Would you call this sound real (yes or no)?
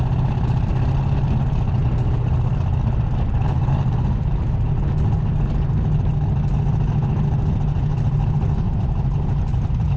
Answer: yes